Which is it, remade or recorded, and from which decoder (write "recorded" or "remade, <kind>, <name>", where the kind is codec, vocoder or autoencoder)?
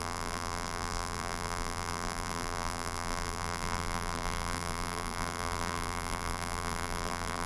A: remade, vocoder, BigVGAN v2